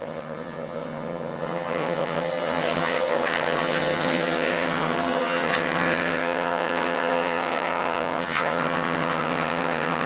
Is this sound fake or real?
fake